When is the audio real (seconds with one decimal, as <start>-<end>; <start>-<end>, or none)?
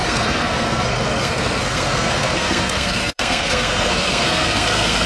none